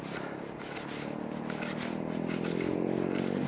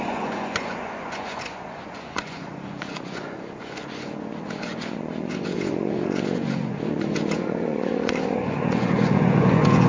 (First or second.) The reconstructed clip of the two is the second